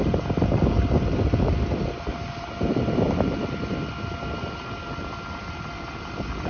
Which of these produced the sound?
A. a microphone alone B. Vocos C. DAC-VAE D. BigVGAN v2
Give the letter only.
A